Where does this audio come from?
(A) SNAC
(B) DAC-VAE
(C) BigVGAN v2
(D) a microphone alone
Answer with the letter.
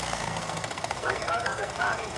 A